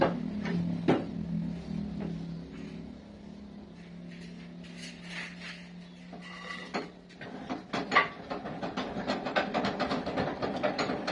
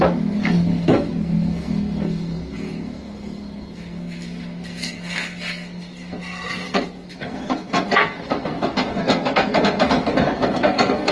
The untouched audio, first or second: first